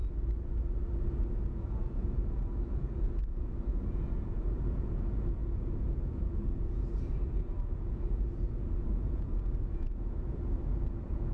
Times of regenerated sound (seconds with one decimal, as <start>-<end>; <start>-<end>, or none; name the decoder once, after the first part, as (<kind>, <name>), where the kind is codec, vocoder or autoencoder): 1.0-11.3 (vocoder, Vocos)